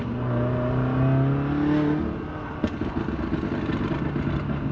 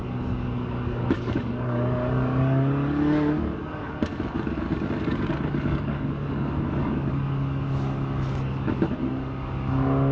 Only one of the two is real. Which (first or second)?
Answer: first